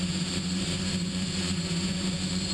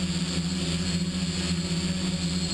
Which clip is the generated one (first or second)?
first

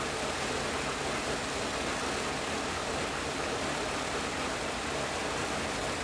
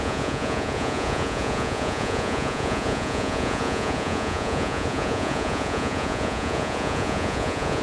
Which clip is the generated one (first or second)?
second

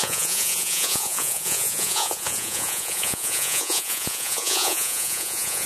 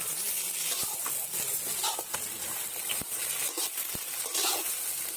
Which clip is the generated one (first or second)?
first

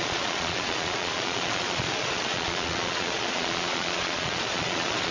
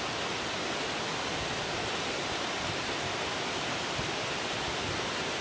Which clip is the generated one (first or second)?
first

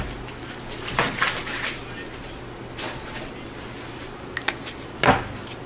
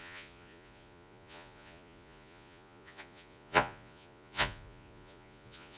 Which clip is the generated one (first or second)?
second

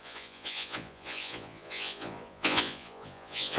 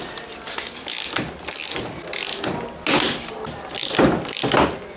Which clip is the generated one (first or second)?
first